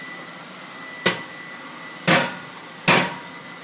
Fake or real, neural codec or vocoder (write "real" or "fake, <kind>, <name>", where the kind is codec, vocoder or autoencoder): real